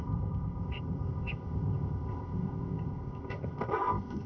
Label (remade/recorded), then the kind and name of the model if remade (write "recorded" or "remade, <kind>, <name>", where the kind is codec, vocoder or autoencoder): remade, codec, ZipCodec